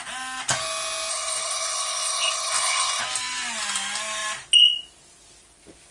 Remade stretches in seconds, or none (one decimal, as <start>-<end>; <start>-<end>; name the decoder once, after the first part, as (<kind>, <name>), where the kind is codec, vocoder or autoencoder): 1.1-3.0 (codec, HILCodec)